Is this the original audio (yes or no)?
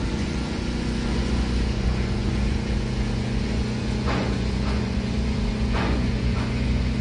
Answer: no